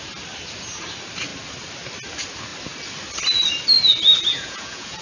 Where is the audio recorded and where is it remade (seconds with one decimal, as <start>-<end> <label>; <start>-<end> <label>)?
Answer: 0.0-4.3 recorded; 4.3-5.0 remade